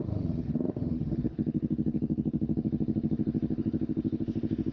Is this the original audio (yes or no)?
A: no